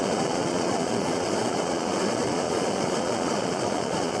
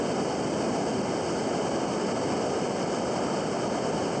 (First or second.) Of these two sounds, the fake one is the first